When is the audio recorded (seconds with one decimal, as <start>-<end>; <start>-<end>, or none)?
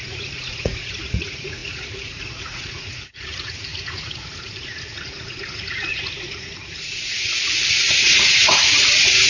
none